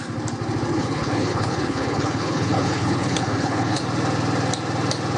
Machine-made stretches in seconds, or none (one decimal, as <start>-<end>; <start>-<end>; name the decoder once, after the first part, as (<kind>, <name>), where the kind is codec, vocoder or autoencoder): 0.7-3.8 (codec, HILCodec)